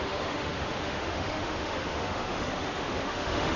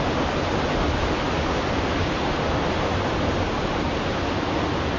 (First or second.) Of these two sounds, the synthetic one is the first